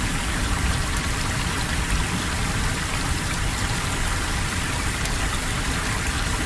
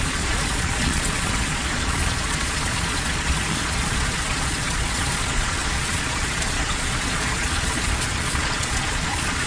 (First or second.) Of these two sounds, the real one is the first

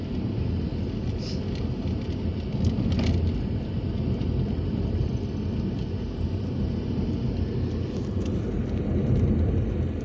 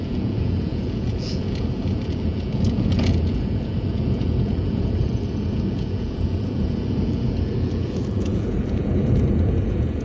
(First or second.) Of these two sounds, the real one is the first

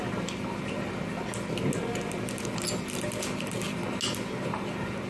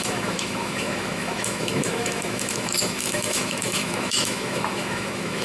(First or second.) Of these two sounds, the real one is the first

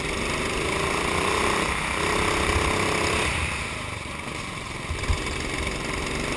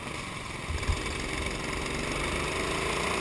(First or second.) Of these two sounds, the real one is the second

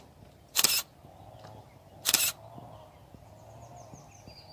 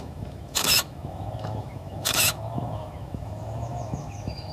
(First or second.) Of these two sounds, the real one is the first